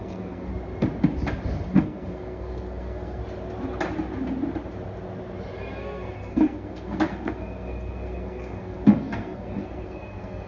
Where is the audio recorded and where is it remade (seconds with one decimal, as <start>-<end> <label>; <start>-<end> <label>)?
0.0-0.5 remade; 0.5-1.8 recorded; 1.8-3.2 remade; 3.2-5.8 recorded; 5.8-10.5 remade